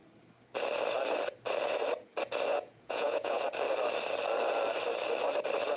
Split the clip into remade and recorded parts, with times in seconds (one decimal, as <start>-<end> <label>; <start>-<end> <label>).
0.0-2.5 recorded; 2.5-3.4 remade; 3.4-5.8 recorded